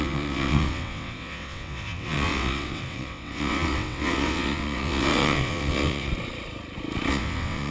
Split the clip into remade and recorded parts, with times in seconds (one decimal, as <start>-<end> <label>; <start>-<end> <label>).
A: 0.0-6.1 remade; 6.1-7.1 recorded; 7.1-7.7 remade